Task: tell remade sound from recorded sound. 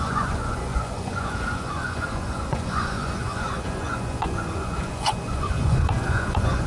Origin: remade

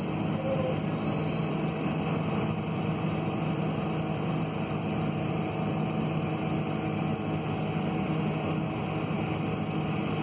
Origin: recorded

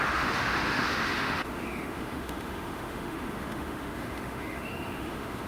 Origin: remade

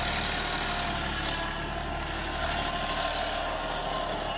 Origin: recorded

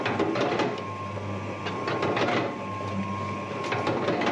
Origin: recorded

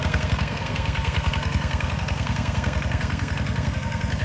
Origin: remade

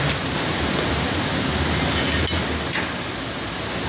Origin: recorded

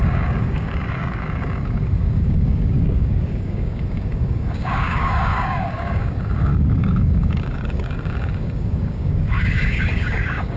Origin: remade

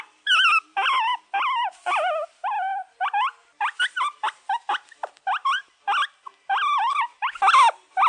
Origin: recorded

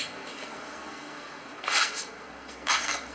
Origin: remade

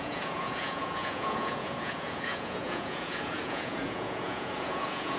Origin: remade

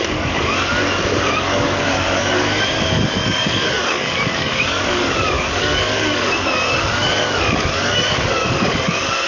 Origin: remade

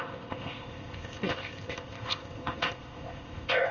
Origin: remade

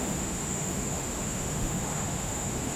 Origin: remade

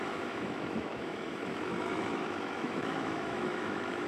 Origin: remade